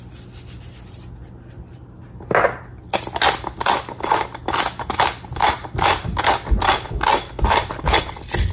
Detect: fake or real real